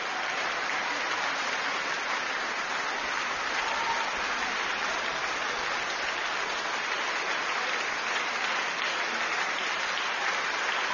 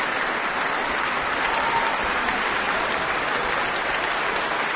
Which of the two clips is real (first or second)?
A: first